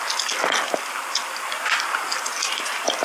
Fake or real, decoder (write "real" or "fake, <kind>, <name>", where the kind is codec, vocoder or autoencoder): real